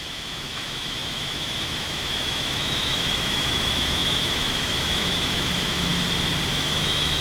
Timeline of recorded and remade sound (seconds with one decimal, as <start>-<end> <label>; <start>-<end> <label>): 0.0-5.9 remade; 5.9-6.5 recorded; 6.5-7.2 remade